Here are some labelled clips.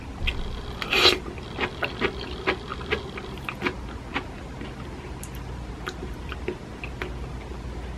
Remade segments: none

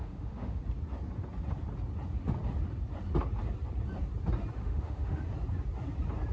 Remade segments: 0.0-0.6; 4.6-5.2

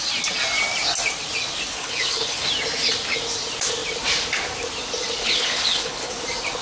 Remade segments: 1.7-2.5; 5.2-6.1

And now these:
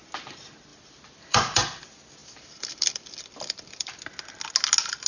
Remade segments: 0.7-1.8; 2.2-3.9

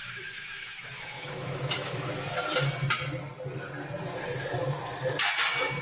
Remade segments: 0.0-2.1